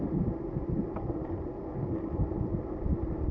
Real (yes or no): yes